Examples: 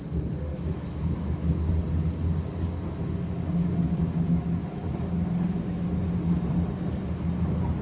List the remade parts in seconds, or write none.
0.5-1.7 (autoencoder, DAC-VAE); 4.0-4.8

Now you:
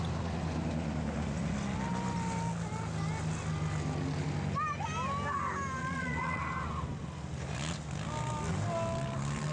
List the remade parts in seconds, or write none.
5.8-6.4 (vocoder, Vocos)

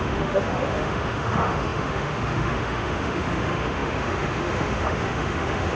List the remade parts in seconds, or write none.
0.0-5.7 (autoencoder, DAC-VAE)

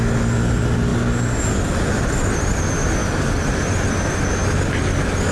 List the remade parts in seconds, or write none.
none

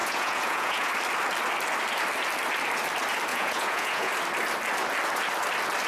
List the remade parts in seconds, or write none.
0.0-0.9 (vocoder, Vocos); 3.3-4.1

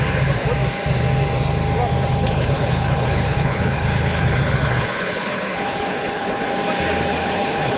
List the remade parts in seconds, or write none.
2.1-6.5 (codec, HILCodec); 7.1-7.8

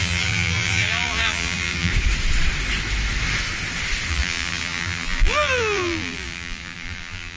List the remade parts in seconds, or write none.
0.0-1.9 (vocoder, BigVGAN v2); 4.1-7.4

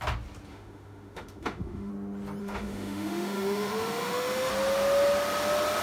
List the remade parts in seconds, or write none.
0.5-1.9 (autoencoder, DAC-VAE); 2.4-4.5